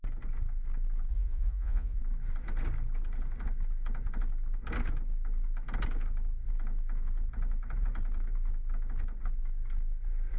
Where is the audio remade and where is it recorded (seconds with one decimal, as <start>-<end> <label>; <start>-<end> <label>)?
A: 0.0-1.1 recorded; 1.1-2.0 remade; 2.0-10.4 recorded